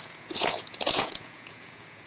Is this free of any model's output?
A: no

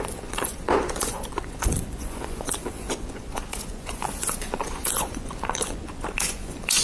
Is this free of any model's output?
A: no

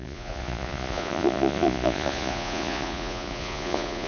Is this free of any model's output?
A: no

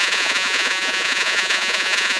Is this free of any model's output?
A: no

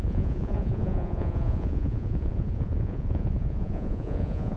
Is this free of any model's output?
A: no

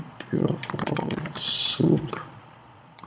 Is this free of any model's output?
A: no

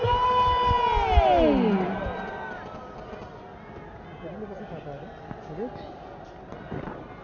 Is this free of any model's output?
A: yes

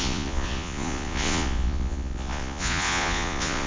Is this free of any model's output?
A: no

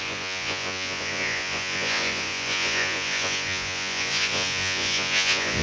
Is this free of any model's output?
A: no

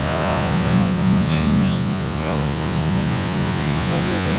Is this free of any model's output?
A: no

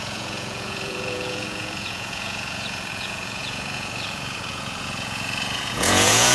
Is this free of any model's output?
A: no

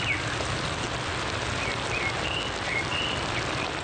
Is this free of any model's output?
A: yes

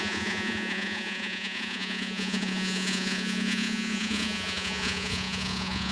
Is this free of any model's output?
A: no